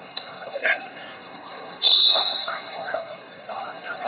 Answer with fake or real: fake